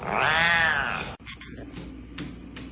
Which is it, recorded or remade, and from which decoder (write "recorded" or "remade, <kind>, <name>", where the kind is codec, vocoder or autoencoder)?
recorded